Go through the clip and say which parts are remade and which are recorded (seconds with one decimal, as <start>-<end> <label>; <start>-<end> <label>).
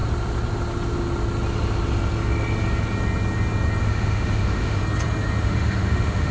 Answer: 0.0-3.8 recorded; 3.8-4.8 remade; 4.8-5.4 recorded; 5.4-6.3 remade